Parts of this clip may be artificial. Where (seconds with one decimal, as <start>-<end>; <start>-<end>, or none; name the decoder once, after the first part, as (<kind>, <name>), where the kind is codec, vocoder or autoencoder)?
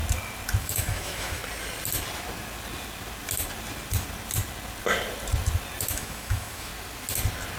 0.6-1.4 (autoencoder, DAC-VAE); 5.9-6.7